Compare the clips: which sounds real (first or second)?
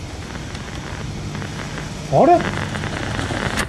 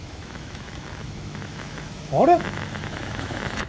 first